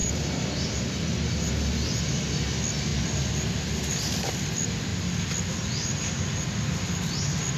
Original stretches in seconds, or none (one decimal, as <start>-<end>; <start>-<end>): 0.8-7.6